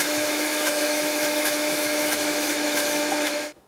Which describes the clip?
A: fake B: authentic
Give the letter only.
A